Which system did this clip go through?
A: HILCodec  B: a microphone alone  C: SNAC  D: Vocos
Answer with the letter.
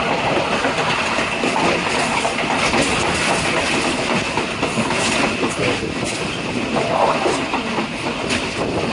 B